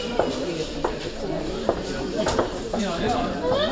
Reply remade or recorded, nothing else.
recorded